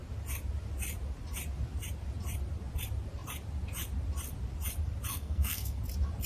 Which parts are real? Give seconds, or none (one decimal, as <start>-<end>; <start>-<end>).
0.0-5.1; 5.8-6.3